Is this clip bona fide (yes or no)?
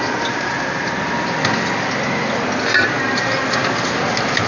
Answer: yes